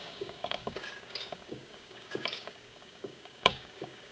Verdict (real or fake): fake